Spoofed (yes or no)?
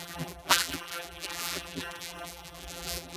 yes